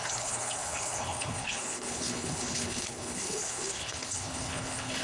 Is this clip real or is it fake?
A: fake